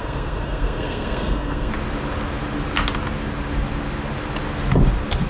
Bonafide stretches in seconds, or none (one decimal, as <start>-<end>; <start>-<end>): 1.7-5.3